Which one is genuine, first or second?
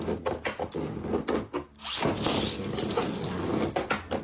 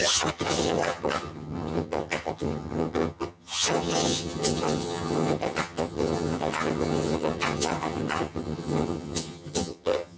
first